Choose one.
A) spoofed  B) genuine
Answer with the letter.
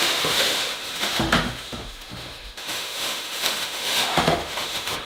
A